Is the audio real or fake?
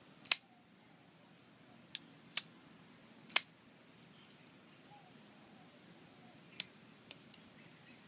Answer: real